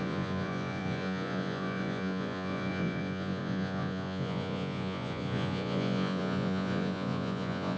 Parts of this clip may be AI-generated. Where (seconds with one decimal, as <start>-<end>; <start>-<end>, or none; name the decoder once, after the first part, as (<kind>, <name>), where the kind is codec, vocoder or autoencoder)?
0.0-7.8 (vocoder, Vocos)